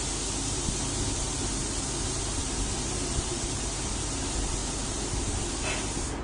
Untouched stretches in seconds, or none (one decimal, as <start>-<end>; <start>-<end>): 0.0-6.2